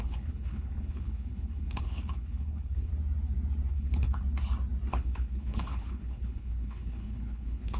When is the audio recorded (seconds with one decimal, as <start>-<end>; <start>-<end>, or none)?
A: 2.9-3.7; 4.2-4.9